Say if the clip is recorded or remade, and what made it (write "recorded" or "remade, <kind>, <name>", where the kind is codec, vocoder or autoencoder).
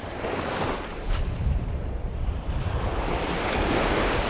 remade, vocoder, BigVGAN v2